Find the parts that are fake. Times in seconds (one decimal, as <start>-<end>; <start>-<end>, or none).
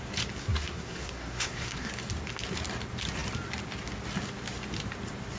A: 0.4-1.9